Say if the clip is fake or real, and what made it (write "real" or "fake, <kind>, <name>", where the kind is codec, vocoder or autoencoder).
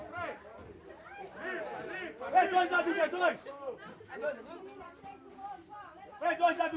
fake, vocoder, BigVGAN v2